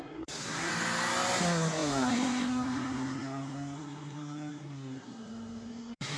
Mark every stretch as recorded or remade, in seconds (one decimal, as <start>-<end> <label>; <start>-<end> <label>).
0.0-0.7 remade; 0.7-1.4 recorded; 1.4-6.2 remade